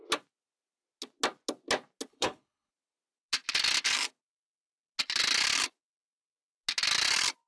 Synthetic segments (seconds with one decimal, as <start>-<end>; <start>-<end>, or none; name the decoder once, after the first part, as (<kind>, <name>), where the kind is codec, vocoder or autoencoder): 2.1-2.7 (codec, HILCodec)